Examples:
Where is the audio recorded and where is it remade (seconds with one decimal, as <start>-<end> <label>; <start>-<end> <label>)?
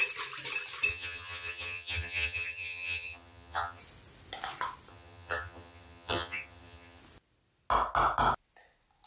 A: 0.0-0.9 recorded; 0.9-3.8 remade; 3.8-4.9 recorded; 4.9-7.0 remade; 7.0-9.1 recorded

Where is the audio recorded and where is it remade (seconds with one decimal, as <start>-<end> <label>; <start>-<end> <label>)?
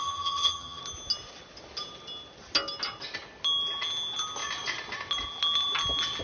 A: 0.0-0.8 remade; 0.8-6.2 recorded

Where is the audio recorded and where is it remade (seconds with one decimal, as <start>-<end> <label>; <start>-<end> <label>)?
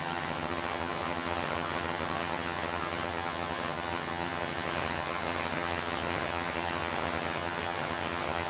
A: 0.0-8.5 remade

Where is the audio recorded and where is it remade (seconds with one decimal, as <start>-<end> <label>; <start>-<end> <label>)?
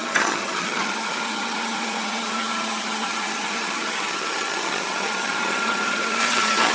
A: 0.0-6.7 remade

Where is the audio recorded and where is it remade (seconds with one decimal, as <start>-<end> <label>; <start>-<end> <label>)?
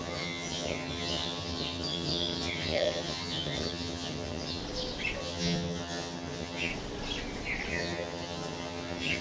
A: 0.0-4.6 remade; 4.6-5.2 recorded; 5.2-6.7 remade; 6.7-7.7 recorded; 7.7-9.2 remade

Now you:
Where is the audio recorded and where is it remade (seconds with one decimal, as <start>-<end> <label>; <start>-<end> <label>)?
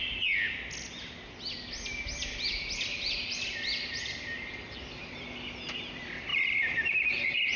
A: 0.0-7.6 recorded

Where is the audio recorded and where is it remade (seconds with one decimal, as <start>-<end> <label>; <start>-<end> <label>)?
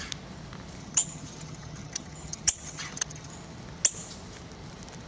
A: 0.0-0.8 recorded; 0.8-3.3 remade; 3.3-5.1 recorded